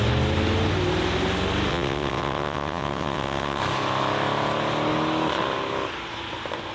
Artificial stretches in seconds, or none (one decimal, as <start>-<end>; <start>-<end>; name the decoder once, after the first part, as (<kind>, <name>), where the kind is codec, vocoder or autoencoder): 1.7-3.6 (vocoder, WaveNeXt)